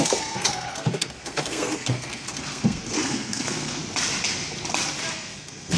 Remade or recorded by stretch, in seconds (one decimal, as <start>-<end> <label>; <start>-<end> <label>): 0.0-3.8 remade; 3.8-5.1 recorded; 5.1-5.8 remade

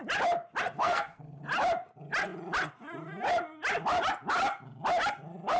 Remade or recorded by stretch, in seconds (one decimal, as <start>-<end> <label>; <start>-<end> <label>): 0.0-0.8 recorded; 0.8-1.4 remade; 1.4-5.6 recorded

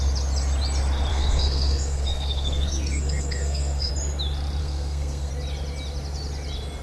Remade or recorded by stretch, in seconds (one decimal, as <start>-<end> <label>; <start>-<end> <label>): 0.0-1.1 recorded; 1.1-3.9 remade; 3.9-4.6 recorded; 4.6-5.3 remade; 5.3-6.8 recorded

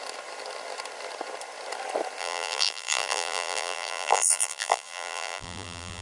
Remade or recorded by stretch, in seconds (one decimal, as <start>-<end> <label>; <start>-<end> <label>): 0.0-2.2 recorded; 2.2-6.0 remade